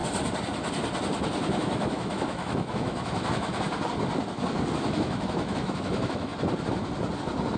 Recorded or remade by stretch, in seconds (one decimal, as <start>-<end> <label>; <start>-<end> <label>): 0.0-1.5 recorded; 1.5-3.5 remade; 3.5-4.8 recorded; 4.8-6.3 remade; 6.3-7.6 recorded